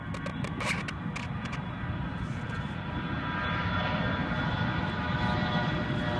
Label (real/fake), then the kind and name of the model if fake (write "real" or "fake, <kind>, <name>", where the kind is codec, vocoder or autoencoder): real